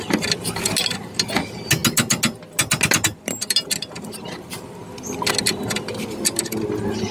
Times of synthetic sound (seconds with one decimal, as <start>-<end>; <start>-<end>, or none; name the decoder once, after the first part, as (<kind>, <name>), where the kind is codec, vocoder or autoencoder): none